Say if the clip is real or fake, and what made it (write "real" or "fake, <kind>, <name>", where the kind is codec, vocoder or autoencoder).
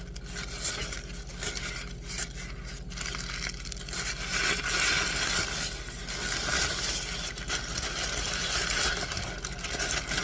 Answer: real